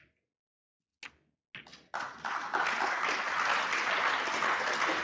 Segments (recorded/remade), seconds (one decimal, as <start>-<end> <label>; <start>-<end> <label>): 0.0-5.0 recorded